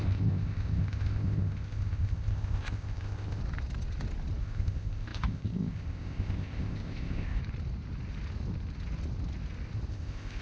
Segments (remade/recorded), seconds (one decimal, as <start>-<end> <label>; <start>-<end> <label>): 0.0-3.4 remade; 3.4-4.4 recorded; 4.4-7.4 remade; 7.4-9.9 recorded; 9.9-10.4 remade